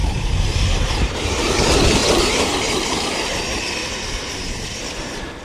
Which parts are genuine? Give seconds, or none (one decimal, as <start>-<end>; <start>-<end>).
1.5-2.0; 3.4-3.8